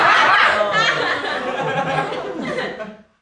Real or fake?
real